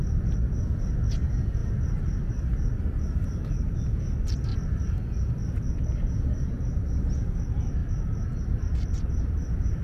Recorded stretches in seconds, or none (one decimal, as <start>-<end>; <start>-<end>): 0.0-9.8